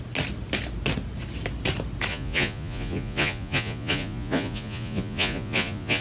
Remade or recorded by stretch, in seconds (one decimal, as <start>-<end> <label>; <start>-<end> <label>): 0.0-2.1 recorded; 2.1-6.0 remade